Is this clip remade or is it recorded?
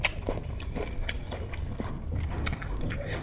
remade